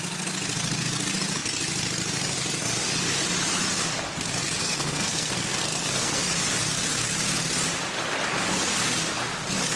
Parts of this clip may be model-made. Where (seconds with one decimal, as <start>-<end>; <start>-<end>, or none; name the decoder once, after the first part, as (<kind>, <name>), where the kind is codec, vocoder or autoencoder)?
4.6-6.2 (codec, SNAC)

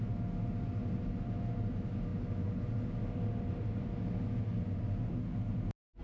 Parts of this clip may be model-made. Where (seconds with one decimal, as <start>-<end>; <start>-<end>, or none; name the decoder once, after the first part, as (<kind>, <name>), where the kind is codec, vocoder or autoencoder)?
none

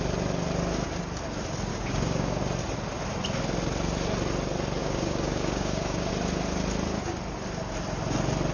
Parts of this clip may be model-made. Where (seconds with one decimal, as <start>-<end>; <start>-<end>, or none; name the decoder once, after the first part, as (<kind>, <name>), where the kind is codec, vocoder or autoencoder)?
1.7-2.4 (codec, DAC); 4.8-6.1

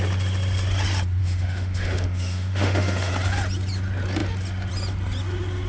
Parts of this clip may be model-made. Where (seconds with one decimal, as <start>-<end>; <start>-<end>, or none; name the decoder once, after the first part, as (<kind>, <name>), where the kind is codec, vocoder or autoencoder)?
1.2-3.1 (autoencoder, DAC-VAE)